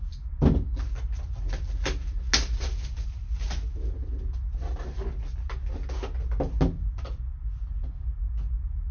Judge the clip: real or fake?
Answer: real